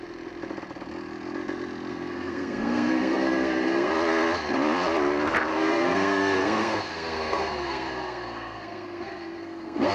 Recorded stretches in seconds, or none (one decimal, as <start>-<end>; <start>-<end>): 0.0-1.9; 3.9-5.5